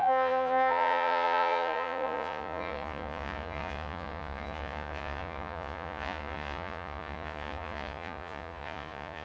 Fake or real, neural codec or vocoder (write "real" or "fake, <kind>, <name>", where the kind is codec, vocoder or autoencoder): fake, vocoder, Vocos